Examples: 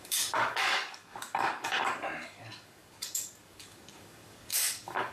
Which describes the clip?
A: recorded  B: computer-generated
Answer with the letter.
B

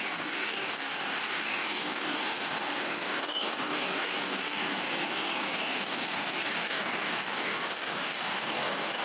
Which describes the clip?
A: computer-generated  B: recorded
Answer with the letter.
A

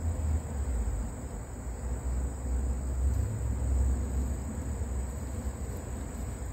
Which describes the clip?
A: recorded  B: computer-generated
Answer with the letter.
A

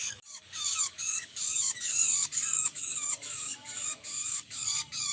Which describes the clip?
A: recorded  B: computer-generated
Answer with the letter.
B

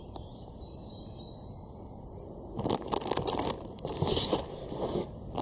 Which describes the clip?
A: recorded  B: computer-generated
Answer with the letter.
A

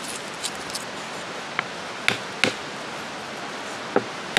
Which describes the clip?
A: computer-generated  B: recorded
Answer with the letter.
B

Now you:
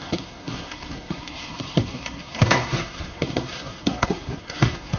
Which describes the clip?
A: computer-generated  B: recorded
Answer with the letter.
A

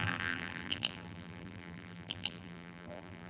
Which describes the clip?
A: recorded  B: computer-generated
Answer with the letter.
B